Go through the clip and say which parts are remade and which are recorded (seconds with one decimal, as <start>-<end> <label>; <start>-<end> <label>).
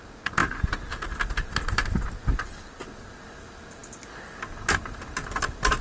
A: 0.0-5.8 recorded